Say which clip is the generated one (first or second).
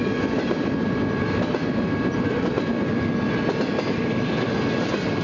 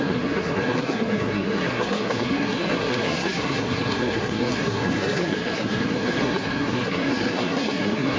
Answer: second